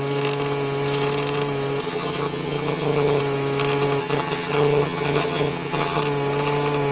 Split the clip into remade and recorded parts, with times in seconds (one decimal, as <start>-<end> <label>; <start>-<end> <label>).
0.0-1.8 recorded; 1.8-3.2 remade; 3.2-4.0 recorded; 4.0-6.0 remade; 6.0-6.9 recorded

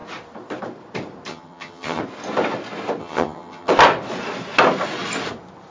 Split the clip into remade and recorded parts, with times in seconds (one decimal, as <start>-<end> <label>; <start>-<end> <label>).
0.0-1.3 recorded; 1.3-2.0 remade; 2.0-3.0 recorded; 3.0-3.7 remade; 3.7-5.7 recorded

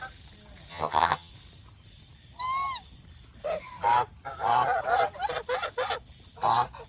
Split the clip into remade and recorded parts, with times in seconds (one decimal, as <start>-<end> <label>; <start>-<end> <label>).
0.0-0.7 recorded; 0.7-1.3 remade; 1.3-6.9 recorded

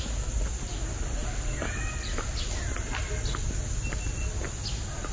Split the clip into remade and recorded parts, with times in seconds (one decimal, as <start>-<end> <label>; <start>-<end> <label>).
0.0-5.1 recorded

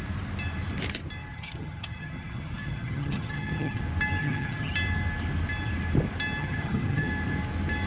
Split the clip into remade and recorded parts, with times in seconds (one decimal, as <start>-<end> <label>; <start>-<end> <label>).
0.0-1.3 recorded; 1.3-3.8 remade; 3.8-4.2 recorded; 4.2-4.7 remade; 4.7-6.4 recorded; 6.4-7.1 remade; 7.1-7.9 recorded

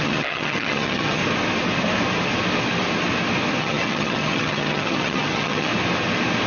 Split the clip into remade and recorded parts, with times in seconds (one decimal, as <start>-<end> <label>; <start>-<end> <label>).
0.0-1.2 remade; 1.2-3.6 recorded; 3.6-5.7 remade; 5.7-6.5 recorded